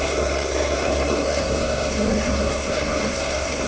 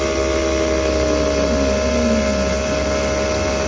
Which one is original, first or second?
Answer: second